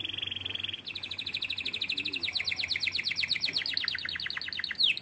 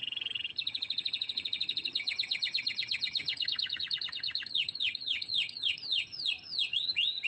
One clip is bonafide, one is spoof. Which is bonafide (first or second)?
first